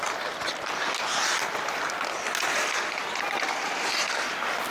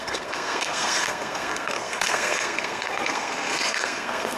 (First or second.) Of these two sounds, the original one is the first